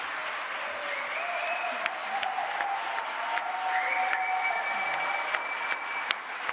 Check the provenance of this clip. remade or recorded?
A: recorded